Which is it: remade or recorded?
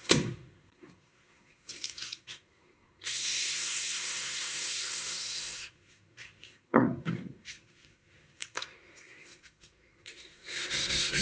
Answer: remade